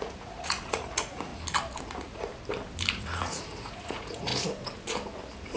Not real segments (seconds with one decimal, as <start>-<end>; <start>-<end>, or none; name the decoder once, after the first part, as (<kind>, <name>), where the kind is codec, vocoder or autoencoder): 0.0-1.3 (vocoder, Vocos); 1.8-2.3; 2.9-4.3